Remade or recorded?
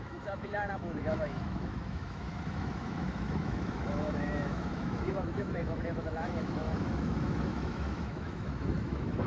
remade